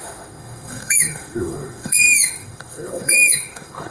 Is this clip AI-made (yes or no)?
yes